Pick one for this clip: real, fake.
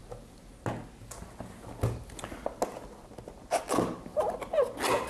real